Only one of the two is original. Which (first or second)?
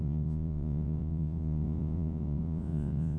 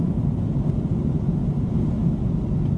second